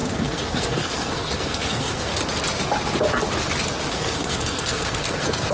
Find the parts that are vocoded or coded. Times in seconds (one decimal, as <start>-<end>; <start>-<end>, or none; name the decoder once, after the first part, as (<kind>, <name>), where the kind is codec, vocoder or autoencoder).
0.0-2.1 (codec, SNAC); 3.9-5.5